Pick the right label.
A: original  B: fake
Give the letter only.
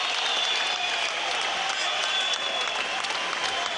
A